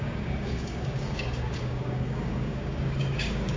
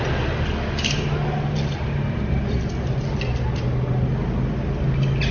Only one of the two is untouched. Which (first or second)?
second